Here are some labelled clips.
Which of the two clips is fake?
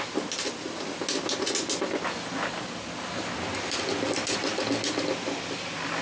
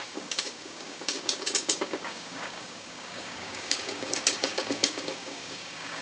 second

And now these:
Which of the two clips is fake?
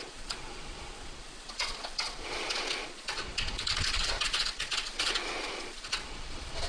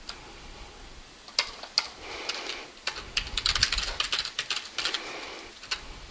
first